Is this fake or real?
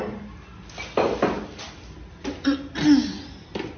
real